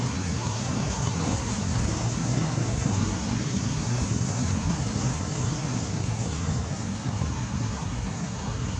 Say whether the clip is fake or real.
fake